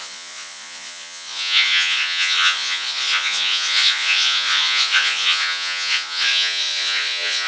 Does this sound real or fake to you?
fake